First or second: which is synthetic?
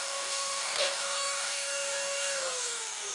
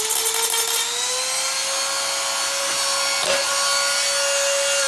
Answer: first